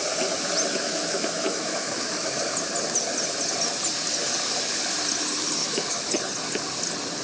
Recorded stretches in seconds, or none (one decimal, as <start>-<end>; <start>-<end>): 0.0-0.7; 2.5-5.6; 6.1-7.2